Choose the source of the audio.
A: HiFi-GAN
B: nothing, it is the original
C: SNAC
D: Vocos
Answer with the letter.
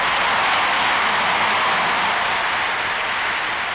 B